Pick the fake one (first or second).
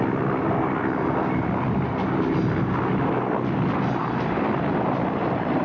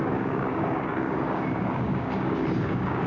second